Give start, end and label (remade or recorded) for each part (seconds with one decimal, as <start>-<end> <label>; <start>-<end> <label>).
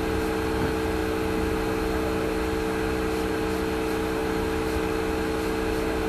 0.0-6.1 recorded